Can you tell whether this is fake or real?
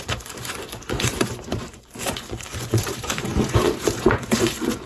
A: fake